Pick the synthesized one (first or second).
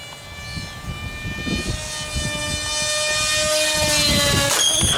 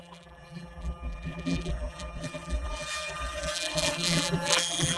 second